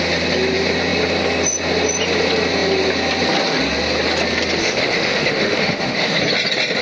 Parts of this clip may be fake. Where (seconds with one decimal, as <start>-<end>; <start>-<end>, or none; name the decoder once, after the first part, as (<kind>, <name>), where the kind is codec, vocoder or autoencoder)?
4.6-6.2 (autoencoder, DAC-VAE)